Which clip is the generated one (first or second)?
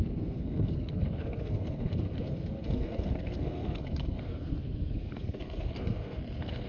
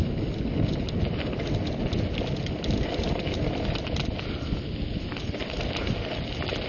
first